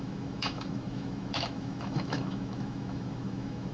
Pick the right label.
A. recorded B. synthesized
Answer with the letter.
B